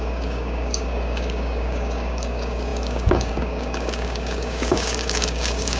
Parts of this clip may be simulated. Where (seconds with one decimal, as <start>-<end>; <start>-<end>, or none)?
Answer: 0.0-5.8